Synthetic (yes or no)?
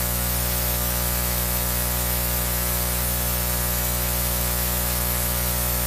yes